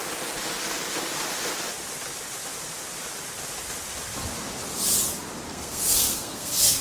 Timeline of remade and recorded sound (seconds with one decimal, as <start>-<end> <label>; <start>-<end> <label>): 0.0-5.5 recorded; 5.5-6.8 remade